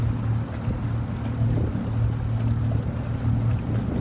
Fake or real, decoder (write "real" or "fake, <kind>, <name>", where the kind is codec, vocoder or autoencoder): real